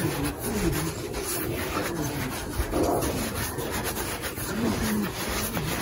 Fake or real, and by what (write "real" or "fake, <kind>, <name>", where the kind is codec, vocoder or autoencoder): real